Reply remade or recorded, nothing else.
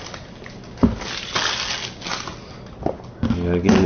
recorded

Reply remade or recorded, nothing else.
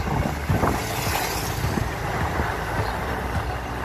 recorded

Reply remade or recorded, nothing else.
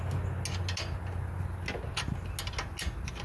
recorded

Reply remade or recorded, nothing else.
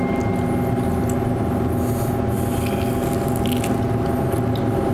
recorded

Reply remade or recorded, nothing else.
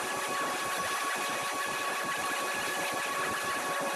recorded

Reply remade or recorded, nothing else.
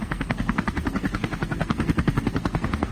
remade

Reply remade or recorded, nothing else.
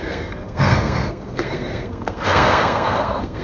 remade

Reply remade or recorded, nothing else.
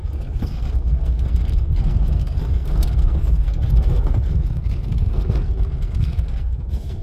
remade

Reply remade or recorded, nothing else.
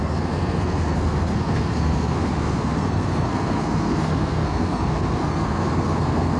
remade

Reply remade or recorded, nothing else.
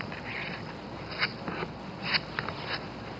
recorded